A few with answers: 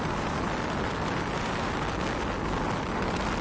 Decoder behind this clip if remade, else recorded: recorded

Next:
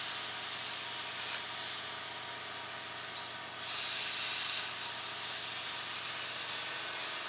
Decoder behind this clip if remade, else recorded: recorded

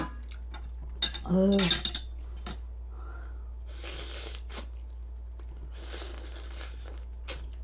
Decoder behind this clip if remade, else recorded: recorded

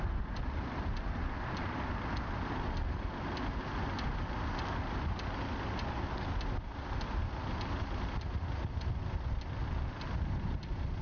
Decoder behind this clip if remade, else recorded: recorded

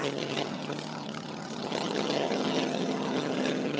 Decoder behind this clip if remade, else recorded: remade, vocoder, HiFi-GAN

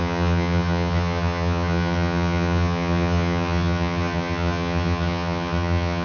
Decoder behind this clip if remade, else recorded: remade, vocoder, HiFi-GAN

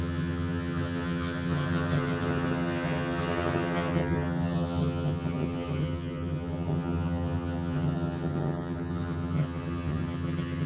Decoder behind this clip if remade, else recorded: remade, vocoder, HiFi-GAN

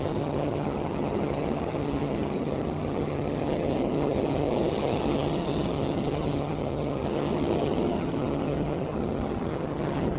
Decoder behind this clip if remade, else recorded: remade, vocoder, HiFi-GAN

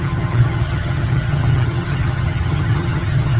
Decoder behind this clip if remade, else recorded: remade, vocoder, HiFi-GAN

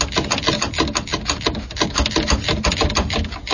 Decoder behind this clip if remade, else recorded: recorded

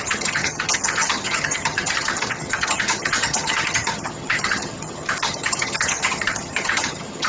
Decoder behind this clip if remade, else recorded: remade, vocoder, HiFi-GAN